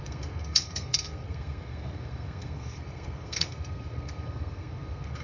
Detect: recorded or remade remade